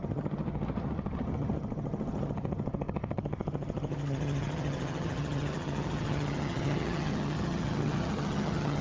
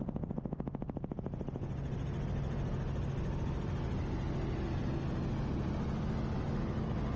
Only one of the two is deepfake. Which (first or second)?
first